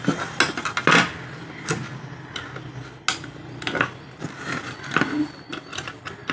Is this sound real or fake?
real